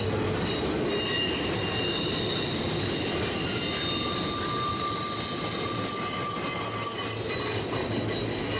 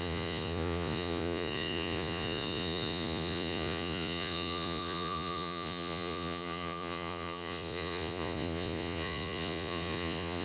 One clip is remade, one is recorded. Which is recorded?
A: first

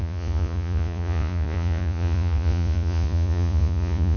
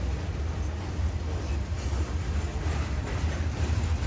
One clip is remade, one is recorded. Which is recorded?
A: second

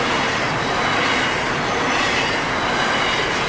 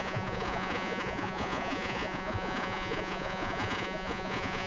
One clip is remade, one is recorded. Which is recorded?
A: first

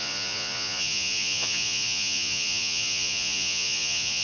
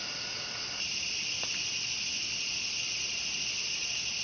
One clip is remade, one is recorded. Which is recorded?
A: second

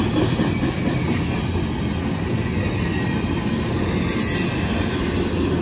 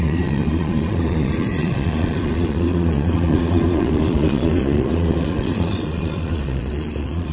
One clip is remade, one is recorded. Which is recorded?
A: first